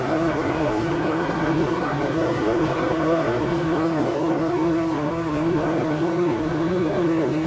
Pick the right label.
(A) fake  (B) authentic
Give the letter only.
A